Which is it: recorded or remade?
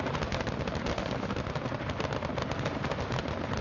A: recorded